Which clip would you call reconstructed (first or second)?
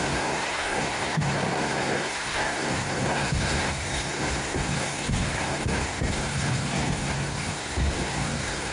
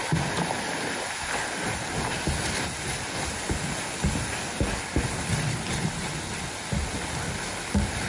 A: first